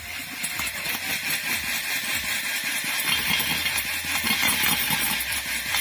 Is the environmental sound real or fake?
real